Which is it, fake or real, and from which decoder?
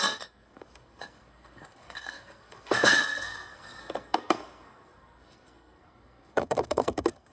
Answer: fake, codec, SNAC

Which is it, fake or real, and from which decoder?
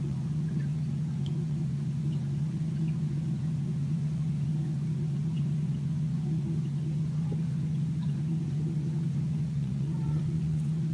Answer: fake, vocoder, Vocos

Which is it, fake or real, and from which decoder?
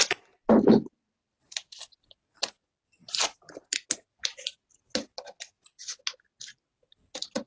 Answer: real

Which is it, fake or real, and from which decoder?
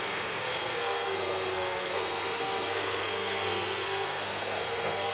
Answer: fake, codec, SNAC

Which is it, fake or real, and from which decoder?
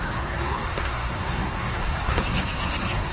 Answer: fake, codec, SNAC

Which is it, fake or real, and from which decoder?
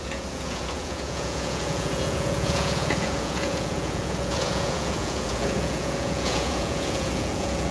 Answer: fake, vocoder, Vocos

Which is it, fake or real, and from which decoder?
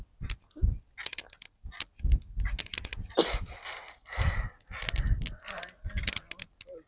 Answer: real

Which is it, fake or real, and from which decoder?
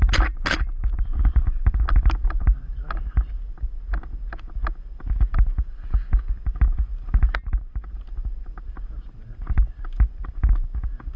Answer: real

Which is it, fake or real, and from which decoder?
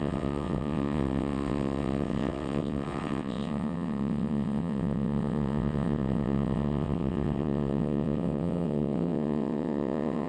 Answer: fake, vocoder, WaveNeXt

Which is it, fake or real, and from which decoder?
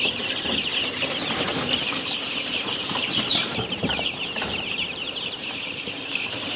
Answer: fake, vocoder, BigVGAN v2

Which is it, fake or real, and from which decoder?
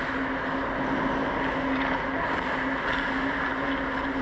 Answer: real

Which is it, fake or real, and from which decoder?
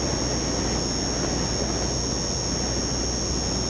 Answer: real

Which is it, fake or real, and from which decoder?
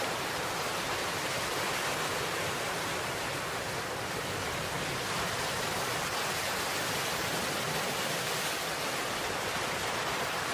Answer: fake, vocoder, BigVGAN v2